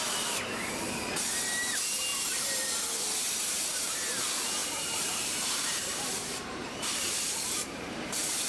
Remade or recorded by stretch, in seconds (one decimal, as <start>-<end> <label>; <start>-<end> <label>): 0.0-4.6 recorded; 4.6-8.5 remade